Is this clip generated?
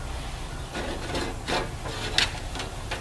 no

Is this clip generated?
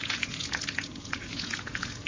yes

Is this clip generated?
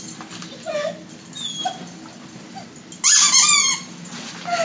no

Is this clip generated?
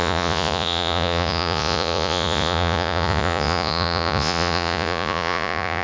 yes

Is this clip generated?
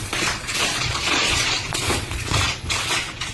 yes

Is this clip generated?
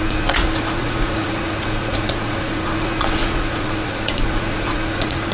yes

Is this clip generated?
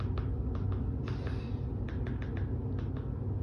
no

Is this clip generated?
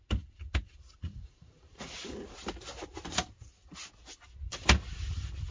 no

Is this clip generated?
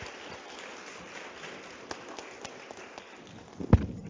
no